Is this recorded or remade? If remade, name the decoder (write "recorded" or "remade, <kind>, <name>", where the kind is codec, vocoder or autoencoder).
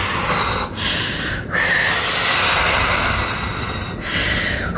recorded